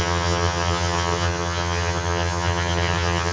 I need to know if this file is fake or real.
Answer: fake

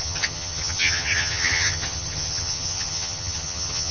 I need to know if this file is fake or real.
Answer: fake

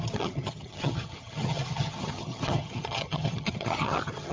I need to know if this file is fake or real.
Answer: fake